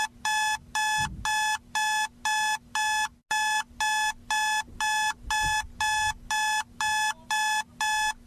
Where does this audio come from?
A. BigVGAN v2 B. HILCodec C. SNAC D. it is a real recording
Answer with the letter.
D